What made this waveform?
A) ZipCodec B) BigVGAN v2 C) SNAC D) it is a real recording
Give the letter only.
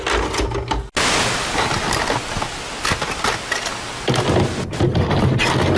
D